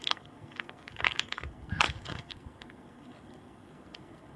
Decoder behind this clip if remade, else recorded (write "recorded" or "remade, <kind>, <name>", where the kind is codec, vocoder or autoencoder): remade, codec, SNAC